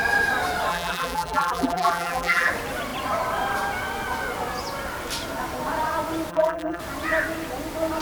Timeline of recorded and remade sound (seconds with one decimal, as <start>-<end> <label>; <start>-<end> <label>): 0.0-0.7 recorded; 0.7-2.5 remade; 2.5-6.3 recorded; 6.3-6.8 remade; 6.8-8.0 recorded